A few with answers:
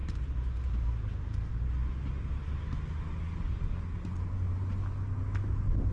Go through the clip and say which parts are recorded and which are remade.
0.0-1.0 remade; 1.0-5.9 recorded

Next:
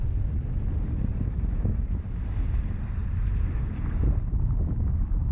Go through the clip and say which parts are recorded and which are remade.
0.0-1.1 recorded; 1.1-2.2 remade; 2.2-3.0 recorded; 3.0-4.6 remade; 4.6-5.3 recorded